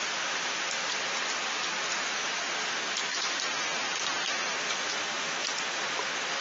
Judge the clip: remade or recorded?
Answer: recorded